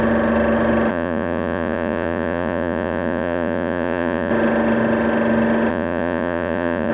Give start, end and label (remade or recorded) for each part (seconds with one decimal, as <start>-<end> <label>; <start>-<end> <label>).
0.0-0.9 recorded; 0.9-4.3 remade; 4.3-5.7 recorded; 5.7-6.9 remade